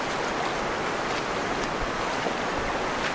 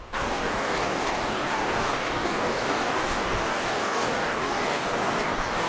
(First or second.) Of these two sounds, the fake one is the second